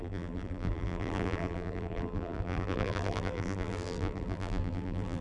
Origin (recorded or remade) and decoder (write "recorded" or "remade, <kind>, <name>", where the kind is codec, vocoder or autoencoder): remade, vocoder, BigVGAN v2